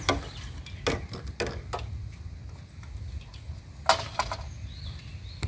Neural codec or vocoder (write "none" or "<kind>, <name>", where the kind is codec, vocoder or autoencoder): none